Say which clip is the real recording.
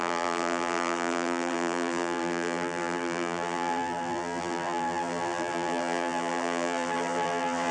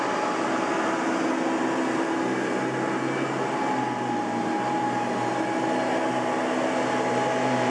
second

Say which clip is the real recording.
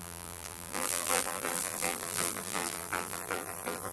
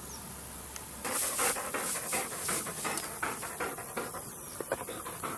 second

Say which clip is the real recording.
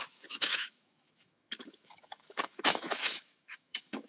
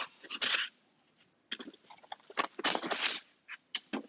second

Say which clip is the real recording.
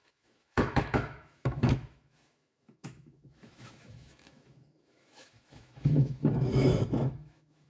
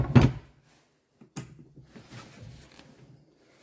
second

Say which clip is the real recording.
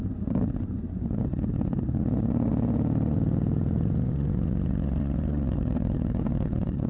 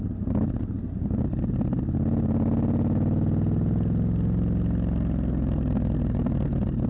second